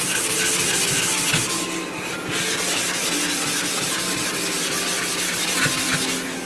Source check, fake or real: real